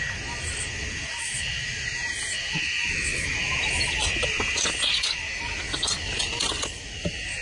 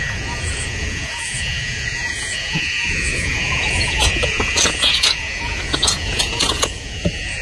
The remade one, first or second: second